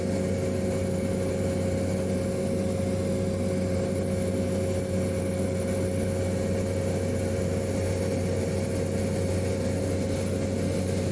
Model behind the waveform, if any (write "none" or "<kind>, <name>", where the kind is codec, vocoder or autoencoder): none